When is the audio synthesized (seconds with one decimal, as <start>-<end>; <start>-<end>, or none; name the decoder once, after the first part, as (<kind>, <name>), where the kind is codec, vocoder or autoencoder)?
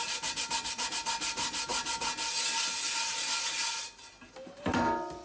none